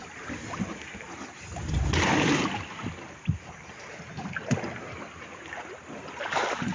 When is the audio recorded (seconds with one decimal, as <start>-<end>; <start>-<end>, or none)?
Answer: 0.0-6.7